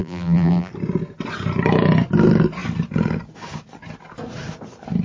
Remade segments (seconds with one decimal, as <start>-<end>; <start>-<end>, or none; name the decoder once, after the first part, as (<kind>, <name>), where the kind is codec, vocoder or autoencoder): 0.0-0.7 (vocoder, BigVGAN v2)